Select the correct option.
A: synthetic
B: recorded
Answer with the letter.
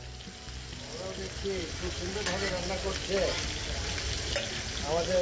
B